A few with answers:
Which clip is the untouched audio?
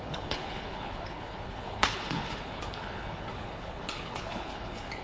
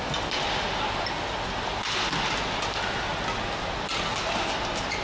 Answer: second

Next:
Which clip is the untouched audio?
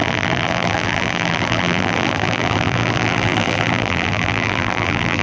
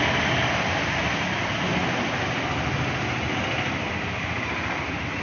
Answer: second